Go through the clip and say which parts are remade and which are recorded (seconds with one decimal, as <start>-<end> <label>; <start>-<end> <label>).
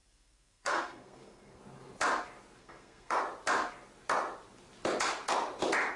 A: 0.0-1.6 remade; 1.6-2.6 recorded; 2.6-3.2 remade; 3.2-6.0 recorded